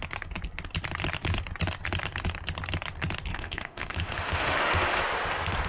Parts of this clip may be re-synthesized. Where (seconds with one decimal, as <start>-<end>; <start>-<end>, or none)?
3.3-5.0